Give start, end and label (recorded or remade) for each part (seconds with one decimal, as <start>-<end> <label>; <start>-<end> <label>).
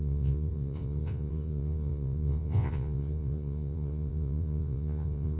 0.0-5.4 remade